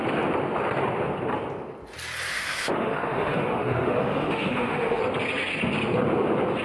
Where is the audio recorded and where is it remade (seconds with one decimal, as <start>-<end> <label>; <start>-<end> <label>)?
0.0-2.3 recorded; 2.3-5.0 remade; 5.0-6.6 recorded